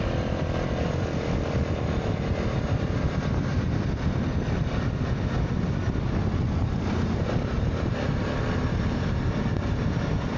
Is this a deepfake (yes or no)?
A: no